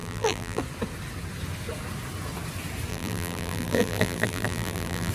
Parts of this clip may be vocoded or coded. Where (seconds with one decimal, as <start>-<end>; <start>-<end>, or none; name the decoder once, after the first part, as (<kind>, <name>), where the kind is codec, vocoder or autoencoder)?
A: 0.0-0.6 (vocoder, BigVGAN v2); 2.9-5.1